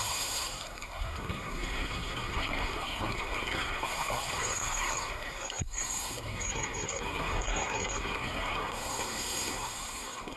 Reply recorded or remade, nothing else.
remade